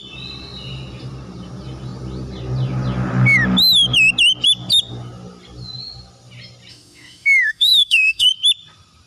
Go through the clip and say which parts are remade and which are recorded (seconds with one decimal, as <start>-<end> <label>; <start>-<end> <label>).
0.0-6.7 recorded; 6.7-8.3 remade; 8.3-9.1 recorded